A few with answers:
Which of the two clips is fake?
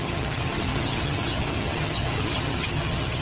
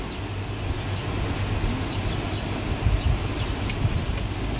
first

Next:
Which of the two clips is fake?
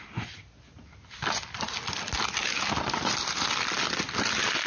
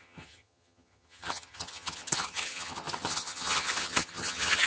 second